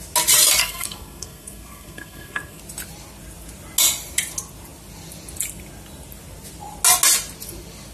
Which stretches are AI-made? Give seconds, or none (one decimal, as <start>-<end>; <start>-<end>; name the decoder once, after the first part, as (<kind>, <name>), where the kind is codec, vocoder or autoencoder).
0.6-2.6 (codec, SNAC)